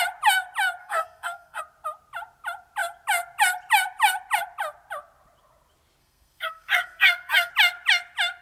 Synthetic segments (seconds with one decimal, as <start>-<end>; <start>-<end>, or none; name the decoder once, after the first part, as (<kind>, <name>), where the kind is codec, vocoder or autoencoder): 0.8-1.6 (codec, SNAC); 6.0-7.5